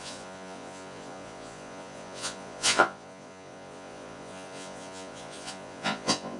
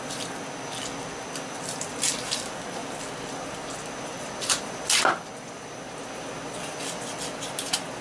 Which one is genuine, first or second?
second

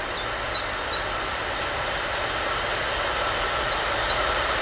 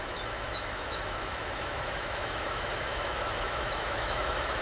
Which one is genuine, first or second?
first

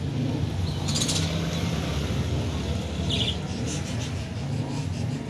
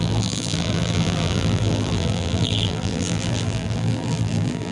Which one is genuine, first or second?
first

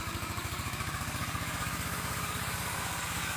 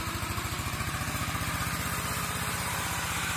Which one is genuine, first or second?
second